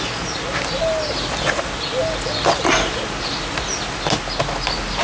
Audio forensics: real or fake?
real